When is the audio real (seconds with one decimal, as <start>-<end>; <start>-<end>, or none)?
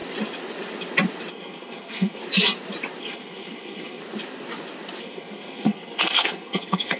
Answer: 0.0-1.3; 2.2-3.0; 4.0-5.0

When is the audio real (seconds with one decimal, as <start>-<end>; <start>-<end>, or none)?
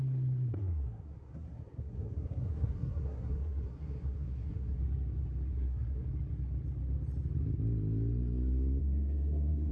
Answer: 0.0-0.6; 4.8-5.5; 6.1-8.8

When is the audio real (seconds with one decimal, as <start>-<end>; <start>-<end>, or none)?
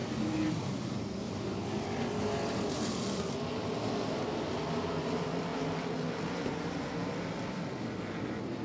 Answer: 0.0-8.6